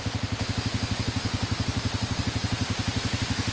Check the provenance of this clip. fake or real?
real